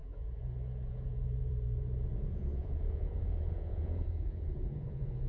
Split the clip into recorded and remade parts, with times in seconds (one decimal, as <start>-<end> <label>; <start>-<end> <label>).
0.0-5.3 remade